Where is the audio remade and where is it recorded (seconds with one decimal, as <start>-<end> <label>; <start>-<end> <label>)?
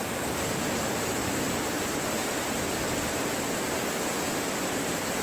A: 0.0-1.2 remade; 1.2-4.3 recorded; 4.3-5.2 remade